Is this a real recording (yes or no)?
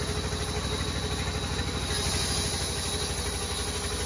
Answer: yes